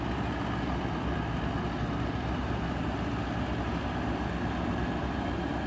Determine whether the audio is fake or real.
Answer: real